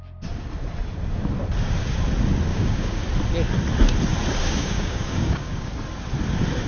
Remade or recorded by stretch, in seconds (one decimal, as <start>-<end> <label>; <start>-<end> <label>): 0.0-2.5 recorded; 2.5-3.0 remade; 3.0-4.4 recorded; 4.4-5.7 remade; 5.7-6.7 recorded